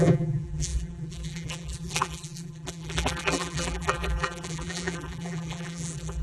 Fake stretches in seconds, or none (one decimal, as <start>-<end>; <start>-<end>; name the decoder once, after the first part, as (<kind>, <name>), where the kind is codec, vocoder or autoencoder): 0.0-6.2 (vocoder, BigVGAN v2)